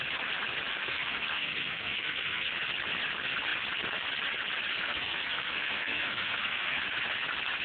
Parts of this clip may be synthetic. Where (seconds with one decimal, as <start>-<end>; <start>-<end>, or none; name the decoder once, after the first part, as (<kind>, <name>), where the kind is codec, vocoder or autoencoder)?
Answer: 0.7-2.5 (codec, SNAC); 4.7-6.8